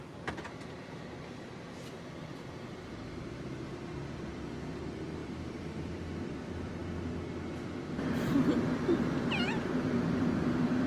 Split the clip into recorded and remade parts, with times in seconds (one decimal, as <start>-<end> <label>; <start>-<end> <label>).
0.0-5.2 recorded; 5.2-6.0 remade; 6.0-10.9 recorded